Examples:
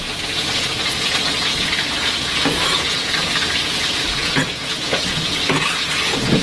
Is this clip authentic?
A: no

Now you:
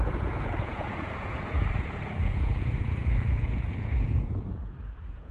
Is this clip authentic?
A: no